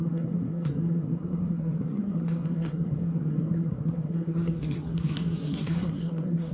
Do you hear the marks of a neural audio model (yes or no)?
yes